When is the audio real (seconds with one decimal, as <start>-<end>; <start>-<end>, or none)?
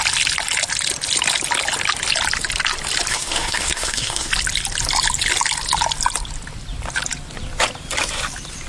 0.0-3.1; 4.3-8.7